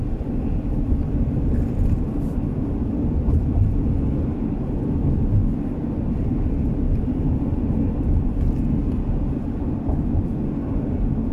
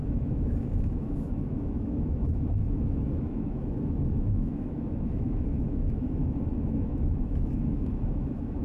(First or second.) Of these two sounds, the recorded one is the first